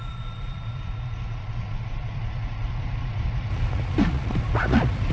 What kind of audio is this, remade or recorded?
remade